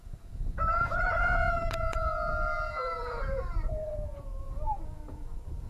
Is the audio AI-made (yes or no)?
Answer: yes